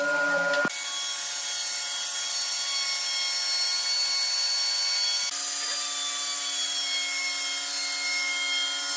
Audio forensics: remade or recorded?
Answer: recorded